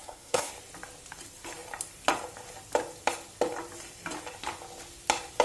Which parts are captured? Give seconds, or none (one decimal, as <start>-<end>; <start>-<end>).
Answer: 0.5-5.4